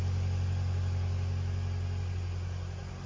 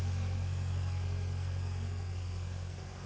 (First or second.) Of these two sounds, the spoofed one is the second